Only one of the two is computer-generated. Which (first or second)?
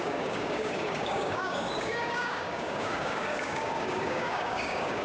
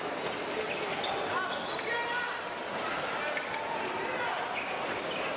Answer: first